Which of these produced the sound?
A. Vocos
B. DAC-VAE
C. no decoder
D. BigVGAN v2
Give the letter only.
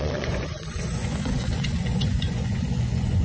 A